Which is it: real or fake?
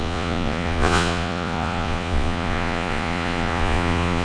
fake